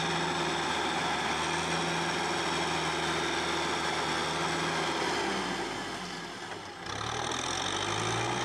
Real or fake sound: real